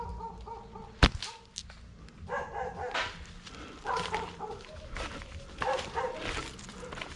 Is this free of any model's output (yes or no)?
yes